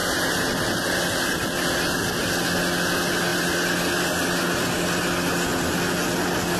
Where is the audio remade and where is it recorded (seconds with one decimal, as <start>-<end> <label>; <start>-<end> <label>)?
0.0-6.6 recorded